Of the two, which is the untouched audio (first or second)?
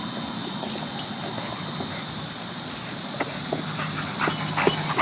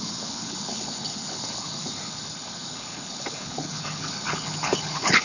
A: first